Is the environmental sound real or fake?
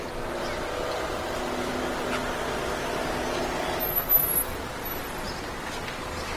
real